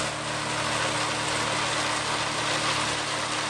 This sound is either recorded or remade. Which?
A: recorded